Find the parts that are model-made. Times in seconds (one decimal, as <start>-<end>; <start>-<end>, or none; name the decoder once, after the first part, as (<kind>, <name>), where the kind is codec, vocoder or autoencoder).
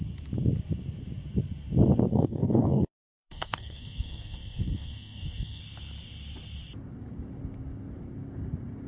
2.1-5.6 (codec, SNAC)